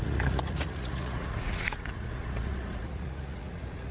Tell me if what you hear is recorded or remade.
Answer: remade